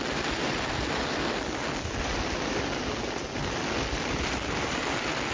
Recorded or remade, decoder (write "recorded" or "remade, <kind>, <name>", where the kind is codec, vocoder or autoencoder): recorded